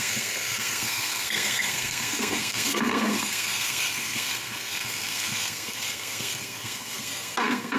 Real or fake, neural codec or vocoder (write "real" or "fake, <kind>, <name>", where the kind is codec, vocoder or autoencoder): fake, codec, SNAC